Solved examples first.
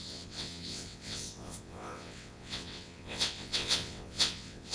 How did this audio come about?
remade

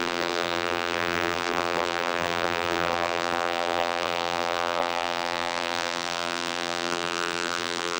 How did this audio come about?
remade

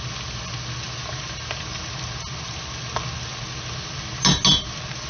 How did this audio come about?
recorded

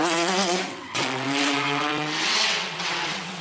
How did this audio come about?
remade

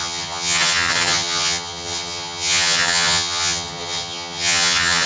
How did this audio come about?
remade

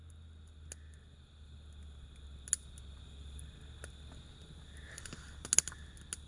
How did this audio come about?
recorded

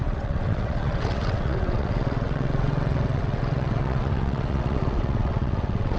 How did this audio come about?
remade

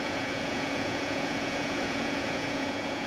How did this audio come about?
remade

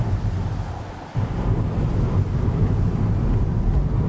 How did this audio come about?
recorded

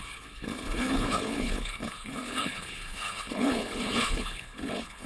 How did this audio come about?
remade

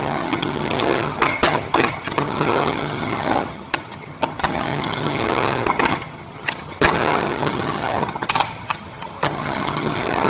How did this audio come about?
remade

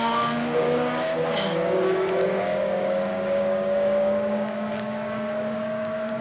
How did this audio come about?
remade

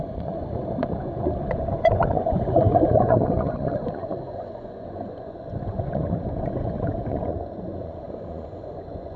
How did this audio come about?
remade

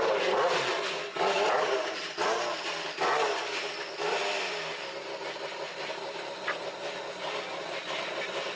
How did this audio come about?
recorded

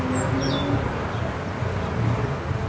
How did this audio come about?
recorded